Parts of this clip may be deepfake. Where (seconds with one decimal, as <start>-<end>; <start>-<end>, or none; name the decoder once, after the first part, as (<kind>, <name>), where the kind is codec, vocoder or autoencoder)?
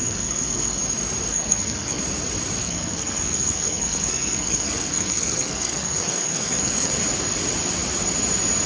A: 0.0-0.8 (codec, SNAC); 1.3-2.0; 2.6-6.9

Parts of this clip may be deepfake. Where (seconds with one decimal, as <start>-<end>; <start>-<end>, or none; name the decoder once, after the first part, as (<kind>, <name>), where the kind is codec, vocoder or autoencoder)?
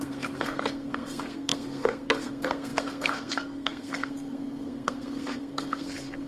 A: 0.0-6.3 (codec, SNAC)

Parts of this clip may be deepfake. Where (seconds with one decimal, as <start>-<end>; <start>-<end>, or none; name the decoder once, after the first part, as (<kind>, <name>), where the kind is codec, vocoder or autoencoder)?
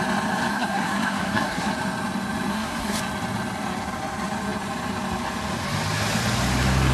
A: 0.5-1.7 (codec, SNAC); 2.5-3.0